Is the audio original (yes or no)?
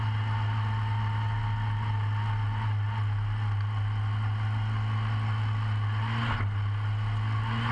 yes